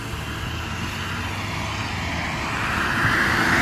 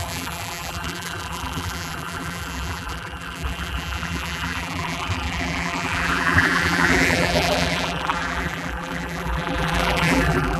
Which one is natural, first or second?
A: first